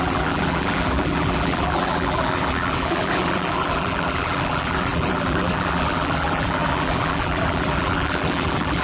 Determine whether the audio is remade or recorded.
remade